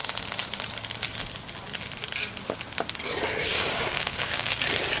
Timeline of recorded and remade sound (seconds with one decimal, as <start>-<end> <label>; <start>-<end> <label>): 0.0-3.5 recorded; 3.5-4.5 remade; 4.5-5.0 recorded

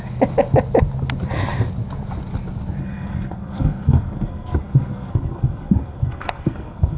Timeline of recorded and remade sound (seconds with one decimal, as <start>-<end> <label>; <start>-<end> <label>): 0.0-2.8 recorded; 2.8-7.0 remade

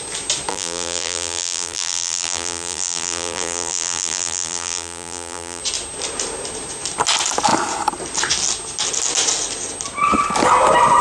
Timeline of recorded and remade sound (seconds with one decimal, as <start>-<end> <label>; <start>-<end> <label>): 0.0-0.5 recorded; 0.5-5.6 remade; 5.6-11.0 recorded

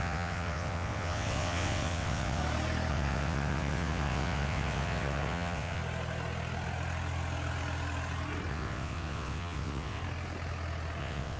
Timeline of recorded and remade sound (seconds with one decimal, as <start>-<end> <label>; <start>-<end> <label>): 0.0-2.4 remade; 2.4-2.9 recorded; 2.9-5.8 remade; 5.8-8.5 recorded; 8.5-10.0 remade; 10.0-11.0 recorded; 11.0-11.4 remade

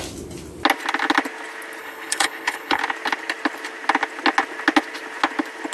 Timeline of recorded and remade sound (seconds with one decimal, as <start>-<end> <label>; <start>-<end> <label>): 0.0-1.8 recorded; 1.8-2.8 remade; 2.8-5.7 recorded

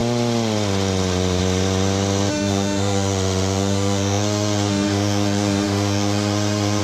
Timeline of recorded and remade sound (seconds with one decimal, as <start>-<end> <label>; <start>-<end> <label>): 0.0-2.3 recorded; 2.3-6.8 remade